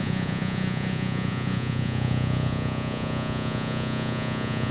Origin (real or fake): fake